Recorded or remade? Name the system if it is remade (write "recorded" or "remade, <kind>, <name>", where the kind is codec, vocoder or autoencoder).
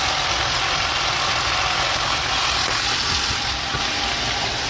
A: recorded